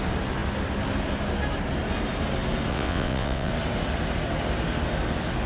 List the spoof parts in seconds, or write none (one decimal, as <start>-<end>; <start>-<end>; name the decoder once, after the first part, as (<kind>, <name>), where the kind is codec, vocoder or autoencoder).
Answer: 2.7-3.5 (vocoder, WaveNeXt)